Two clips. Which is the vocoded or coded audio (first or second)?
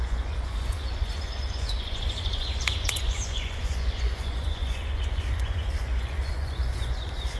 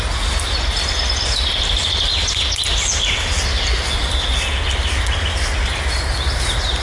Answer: first